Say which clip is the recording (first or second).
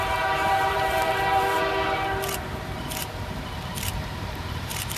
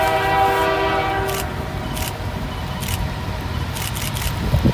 second